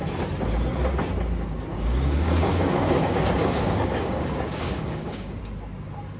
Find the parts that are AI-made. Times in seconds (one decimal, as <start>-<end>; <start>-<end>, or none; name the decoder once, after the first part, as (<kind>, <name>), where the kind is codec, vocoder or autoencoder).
1.7-5.4 (codec, DAC)